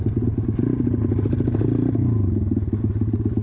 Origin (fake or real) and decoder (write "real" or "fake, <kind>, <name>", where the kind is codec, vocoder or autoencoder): real